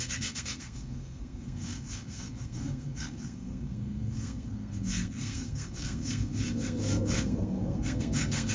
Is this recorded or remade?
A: remade